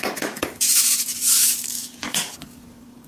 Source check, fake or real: fake